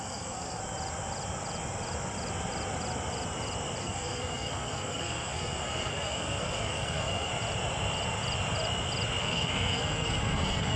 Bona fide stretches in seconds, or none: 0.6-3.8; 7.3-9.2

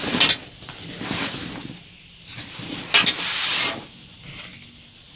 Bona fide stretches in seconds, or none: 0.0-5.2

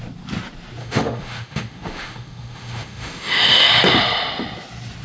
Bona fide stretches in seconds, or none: 0.0-0.8; 3.8-5.0